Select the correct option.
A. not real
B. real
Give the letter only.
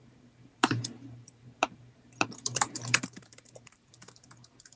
A